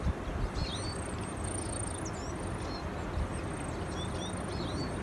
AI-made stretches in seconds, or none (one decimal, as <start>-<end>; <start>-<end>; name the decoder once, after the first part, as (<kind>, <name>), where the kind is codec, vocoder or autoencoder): none